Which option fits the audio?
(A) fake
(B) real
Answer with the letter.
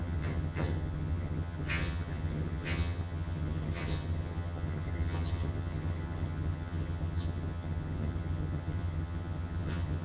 A